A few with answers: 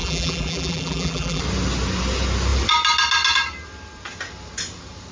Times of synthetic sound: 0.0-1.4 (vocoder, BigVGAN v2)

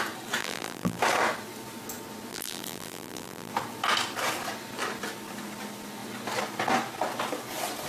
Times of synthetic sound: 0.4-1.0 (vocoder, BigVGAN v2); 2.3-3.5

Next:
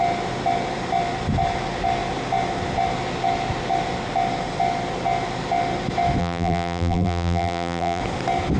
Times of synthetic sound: 6.2-8.0 (vocoder, BigVGAN v2)

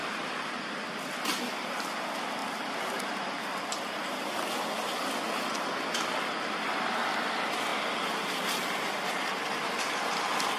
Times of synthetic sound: none

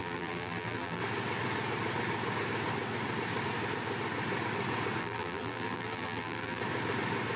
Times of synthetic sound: 0.0-1.0 (vocoder, BigVGAN v2); 5.0-6.6

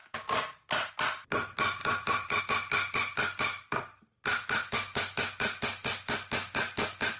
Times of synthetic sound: 1.8-2.4 (vocoder, BigVGAN v2); 3.5-4.2